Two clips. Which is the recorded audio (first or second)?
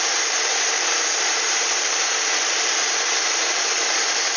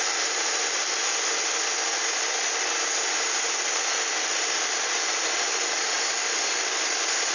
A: second